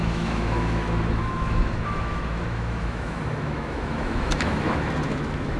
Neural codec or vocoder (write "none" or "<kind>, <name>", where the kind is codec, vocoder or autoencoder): autoencoder, DAC-VAE